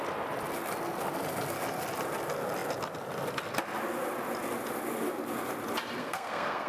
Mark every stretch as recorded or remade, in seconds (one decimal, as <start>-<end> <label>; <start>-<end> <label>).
0.0-6.0 recorded; 6.0-6.7 remade